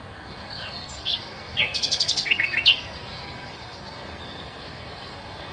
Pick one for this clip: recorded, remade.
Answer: remade